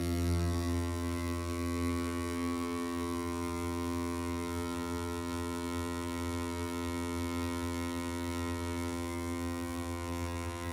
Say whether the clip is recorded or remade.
remade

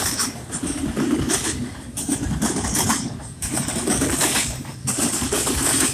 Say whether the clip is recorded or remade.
remade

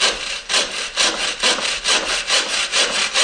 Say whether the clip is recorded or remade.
recorded